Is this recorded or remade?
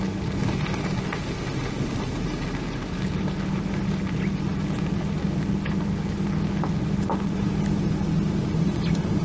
recorded